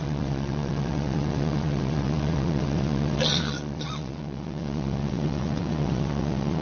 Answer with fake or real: fake